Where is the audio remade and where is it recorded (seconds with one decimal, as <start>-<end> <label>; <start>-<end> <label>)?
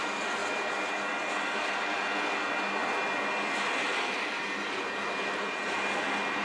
0.0-6.4 recorded